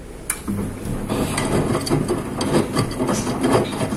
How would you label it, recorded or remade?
recorded